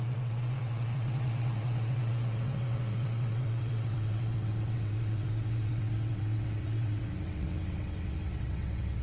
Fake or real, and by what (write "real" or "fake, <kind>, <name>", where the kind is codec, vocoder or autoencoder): fake, vocoder, WaveNeXt